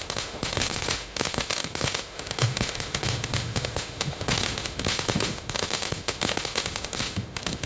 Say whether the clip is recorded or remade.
remade